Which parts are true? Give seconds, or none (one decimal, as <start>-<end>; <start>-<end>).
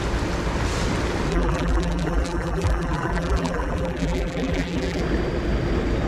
0.0-1.3; 5.0-6.1